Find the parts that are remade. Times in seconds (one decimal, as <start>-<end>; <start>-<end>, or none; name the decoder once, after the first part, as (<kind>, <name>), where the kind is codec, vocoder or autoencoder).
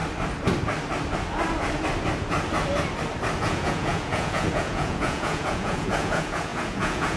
3.4-7.2 (vocoder, Vocos)